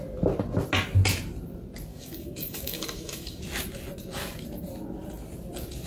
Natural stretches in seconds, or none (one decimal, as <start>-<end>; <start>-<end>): 0.0-1.9; 3.4-5.9